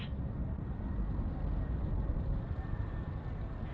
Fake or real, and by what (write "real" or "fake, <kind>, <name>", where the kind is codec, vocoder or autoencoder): real